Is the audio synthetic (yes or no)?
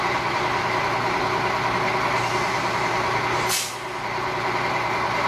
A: no